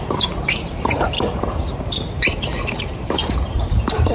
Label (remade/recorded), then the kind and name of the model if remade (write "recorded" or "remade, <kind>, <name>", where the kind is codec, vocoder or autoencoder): remade, vocoder, BigVGAN v2